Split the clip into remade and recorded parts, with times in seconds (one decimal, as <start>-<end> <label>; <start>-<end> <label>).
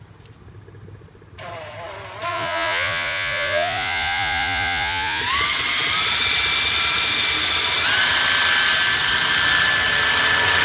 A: 0.0-2.3 recorded; 2.3-5.2 remade; 5.2-10.6 recorded